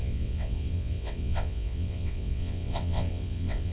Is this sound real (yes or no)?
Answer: no